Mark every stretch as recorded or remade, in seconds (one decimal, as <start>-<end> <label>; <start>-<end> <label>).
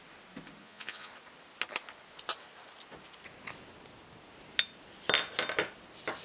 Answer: 0.0-0.6 recorded; 0.6-1.1 remade; 1.1-6.2 recorded